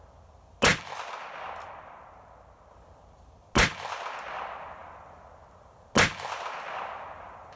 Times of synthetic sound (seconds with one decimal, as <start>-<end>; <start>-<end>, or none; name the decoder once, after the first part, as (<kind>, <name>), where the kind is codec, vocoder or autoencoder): none